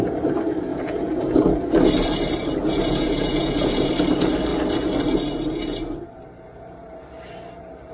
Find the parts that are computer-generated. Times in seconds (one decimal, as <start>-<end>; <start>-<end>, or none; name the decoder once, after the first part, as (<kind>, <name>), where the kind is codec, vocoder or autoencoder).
0.7-1.4 (vocoder, Vocos); 2.6-3.9